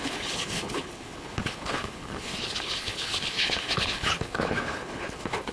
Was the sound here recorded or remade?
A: remade